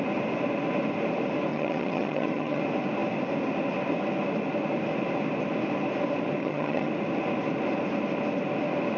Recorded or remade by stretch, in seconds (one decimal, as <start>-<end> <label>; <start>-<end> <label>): 0.0-1.5 recorded; 1.5-2.6 remade; 2.6-6.4 recorded; 6.4-6.9 remade; 6.9-9.0 recorded